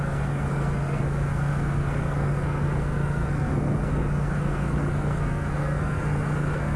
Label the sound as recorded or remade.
remade